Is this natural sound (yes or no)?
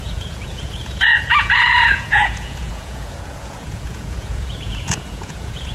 no